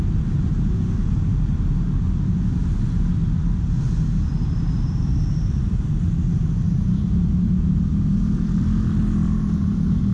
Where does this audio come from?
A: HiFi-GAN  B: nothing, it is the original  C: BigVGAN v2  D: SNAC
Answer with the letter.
C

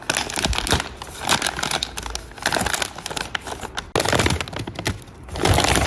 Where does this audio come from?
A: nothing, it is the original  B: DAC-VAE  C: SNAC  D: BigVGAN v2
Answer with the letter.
A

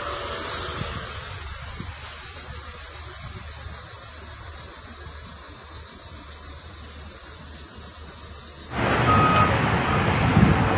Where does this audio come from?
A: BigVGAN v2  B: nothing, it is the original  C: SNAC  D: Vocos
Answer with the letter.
B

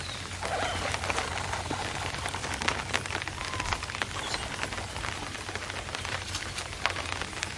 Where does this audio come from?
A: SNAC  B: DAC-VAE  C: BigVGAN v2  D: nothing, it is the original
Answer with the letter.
D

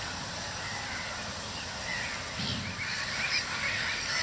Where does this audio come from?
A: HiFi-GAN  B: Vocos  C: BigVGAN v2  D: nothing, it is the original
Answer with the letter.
D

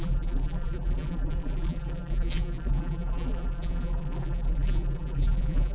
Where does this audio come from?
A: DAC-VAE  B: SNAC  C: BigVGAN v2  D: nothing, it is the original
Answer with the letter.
C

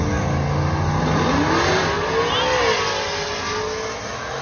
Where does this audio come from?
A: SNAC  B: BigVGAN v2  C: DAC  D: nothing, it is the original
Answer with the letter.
D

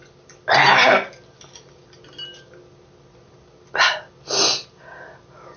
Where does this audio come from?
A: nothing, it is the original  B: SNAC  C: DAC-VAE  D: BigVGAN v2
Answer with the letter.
A